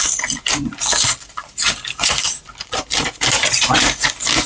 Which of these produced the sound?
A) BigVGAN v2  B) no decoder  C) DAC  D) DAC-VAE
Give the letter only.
B